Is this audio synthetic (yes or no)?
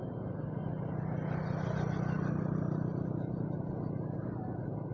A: no